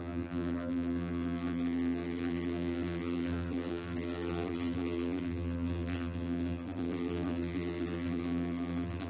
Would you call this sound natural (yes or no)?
no